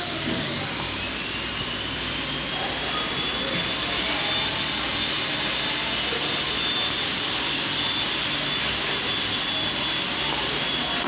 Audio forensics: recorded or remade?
recorded